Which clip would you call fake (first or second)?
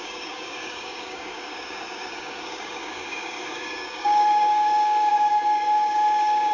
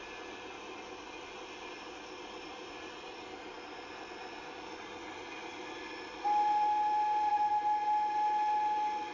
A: first